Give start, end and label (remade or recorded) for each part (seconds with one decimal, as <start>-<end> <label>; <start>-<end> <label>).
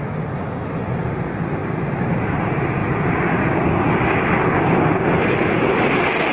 0.0-6.3 recorded